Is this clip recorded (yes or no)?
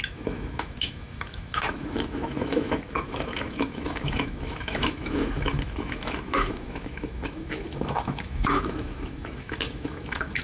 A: no